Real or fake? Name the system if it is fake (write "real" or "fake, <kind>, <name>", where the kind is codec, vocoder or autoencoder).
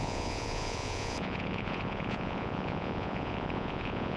fake, vocoder, Vocos